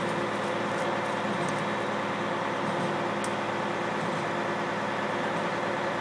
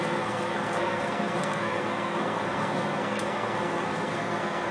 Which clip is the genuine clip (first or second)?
first